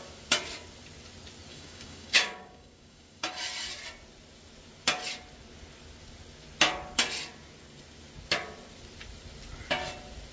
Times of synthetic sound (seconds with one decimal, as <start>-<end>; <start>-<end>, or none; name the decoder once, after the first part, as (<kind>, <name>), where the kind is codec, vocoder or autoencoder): 1.5-3.3 (codec, DAC)